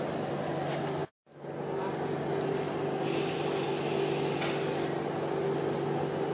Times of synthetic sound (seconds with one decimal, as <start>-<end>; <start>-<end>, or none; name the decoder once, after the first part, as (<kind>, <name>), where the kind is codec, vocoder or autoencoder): none